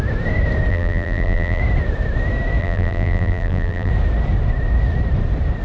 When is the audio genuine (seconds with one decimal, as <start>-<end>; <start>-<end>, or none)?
0.0-0.7; 1.6-2.6; 3.9-5.6